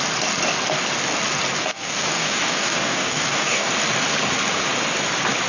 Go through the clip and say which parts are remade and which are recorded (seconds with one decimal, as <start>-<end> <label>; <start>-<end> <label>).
0.0-1.6 recorded; 1.6-3.7 remade; 3.7-5.5 recorded